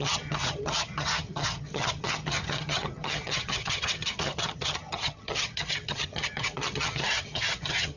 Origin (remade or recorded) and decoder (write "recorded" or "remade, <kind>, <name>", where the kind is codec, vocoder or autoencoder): remade, vocoder, HiFi-GAN